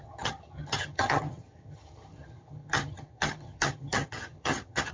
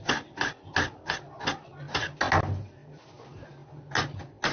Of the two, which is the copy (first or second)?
first